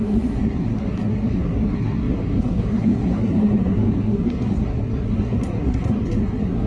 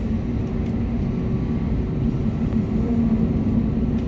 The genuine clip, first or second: second